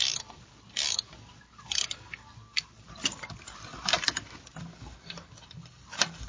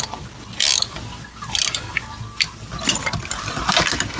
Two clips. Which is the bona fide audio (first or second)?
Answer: second